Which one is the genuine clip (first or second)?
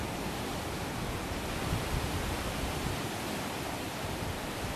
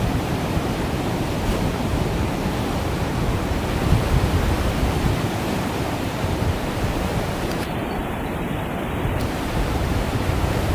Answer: first